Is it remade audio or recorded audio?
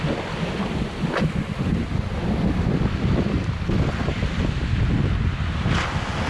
recorded